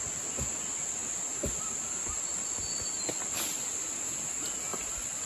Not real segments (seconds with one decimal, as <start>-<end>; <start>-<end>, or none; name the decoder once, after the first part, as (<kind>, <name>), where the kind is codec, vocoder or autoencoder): none